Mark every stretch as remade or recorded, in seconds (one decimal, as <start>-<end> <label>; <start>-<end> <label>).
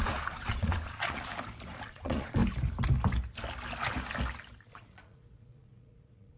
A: 0.0-1.3 remade; 1.3-1.9 recorded; 1.9-2.4 remade; 2.4-4.7 recorded; 4.7-6.4 remade